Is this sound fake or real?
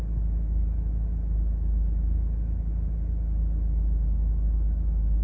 real